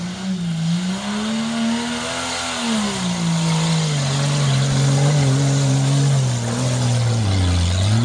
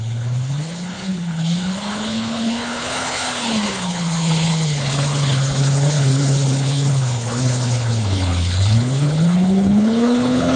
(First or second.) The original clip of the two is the first